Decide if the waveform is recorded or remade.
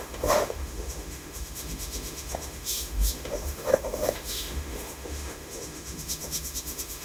remade